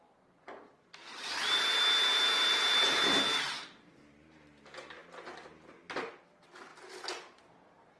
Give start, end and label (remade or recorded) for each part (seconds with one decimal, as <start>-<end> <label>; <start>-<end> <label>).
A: 0.0-6.7 recorded; 6.7-7.4 remade; 7.4-8.0 recorded